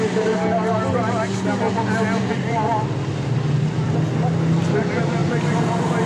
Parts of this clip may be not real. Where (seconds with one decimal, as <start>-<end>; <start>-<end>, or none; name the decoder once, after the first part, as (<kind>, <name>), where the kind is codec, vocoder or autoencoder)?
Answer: none